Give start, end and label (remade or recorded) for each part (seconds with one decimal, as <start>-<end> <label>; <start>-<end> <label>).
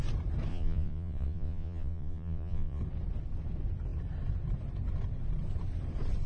0.0-0.5 recorded; 0.5-2.8 remade; 2.8-6.3 recorded